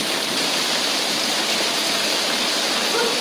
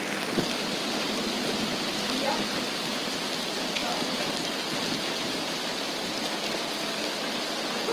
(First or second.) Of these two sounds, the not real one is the first